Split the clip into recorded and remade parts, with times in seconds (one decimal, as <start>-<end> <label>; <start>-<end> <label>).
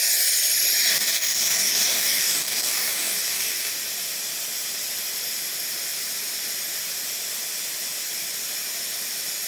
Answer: 0.0-0.9 recorded; 0.9-3.7 remade; 3.7-9.5 recorded